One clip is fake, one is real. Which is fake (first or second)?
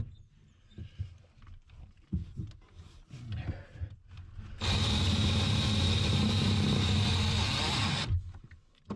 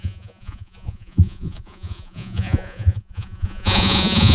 second